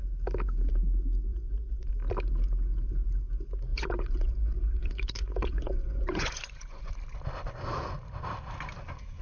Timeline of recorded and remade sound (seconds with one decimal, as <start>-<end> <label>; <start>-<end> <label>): 0.0-1.3 recorded; 1.3-1.9 remade; 1.9-3.7 recorded; 3.7-6.9 remade; 6.9-9.2 recorded